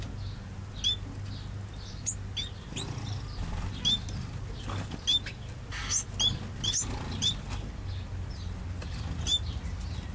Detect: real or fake real